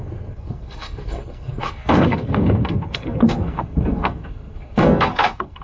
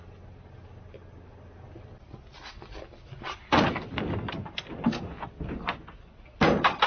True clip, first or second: second